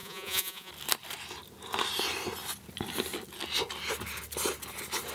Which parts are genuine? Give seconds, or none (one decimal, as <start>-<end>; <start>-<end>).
0.7-5.1